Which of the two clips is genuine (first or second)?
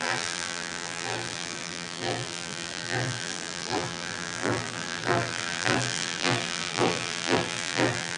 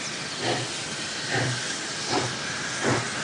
second